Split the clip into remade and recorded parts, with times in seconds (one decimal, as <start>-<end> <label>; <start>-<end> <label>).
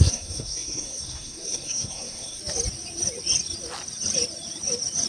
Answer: 0.0-2.4 remade; 2.4-5.1 recorded